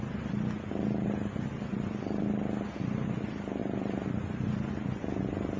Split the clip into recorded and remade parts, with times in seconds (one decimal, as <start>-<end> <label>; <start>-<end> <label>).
0.0-5.6 recorded